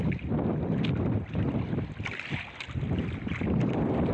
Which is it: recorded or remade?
recorded